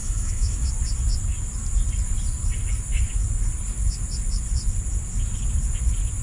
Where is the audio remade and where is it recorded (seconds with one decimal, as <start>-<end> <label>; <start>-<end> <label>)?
0.0-0.7 remade; 0.7-6.2 recorded